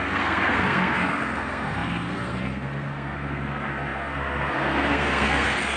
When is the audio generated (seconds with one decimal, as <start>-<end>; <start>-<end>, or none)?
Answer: 0.0-5.8